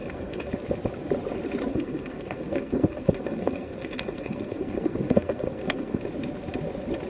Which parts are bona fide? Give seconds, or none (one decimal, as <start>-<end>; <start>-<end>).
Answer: 0.5-1.7; 6.0-7.1